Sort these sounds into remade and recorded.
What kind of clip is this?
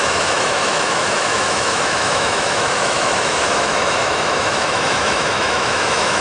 remade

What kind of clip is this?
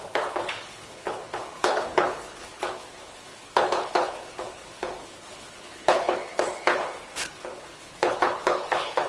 remade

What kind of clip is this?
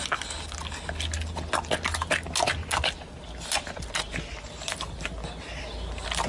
recorded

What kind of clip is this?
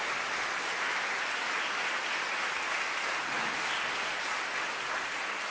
recorded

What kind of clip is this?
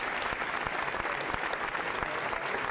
recorded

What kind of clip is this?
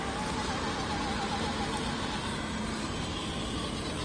recorded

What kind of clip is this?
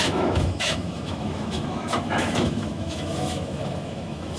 remade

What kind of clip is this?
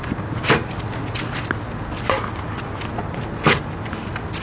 recorded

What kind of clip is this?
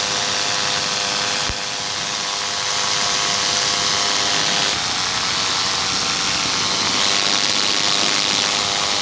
recorded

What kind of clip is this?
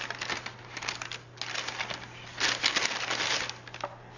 recorded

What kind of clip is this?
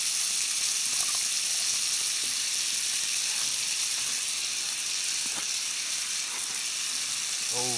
recorded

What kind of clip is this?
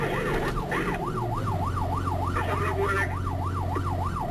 recorded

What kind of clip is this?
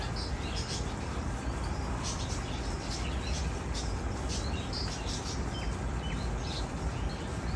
recorded